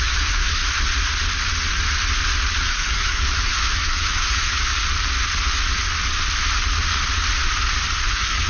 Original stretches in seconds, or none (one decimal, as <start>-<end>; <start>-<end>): 0.6-2.6; 4.7-8.1